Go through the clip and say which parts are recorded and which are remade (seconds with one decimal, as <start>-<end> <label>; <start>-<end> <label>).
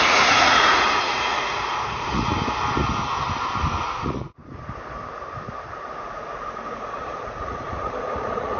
0.0-2.3 remade; 2.3-3.8 recorded; 3.8-4.4 remade; 4.4-6.0 recorded; 6.0-8.6 remade